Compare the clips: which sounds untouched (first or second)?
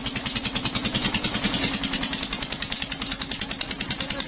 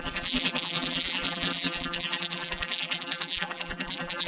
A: first